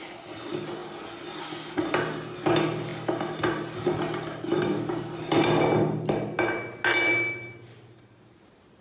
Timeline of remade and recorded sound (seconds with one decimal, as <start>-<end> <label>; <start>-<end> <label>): 0.0-8.8 recorded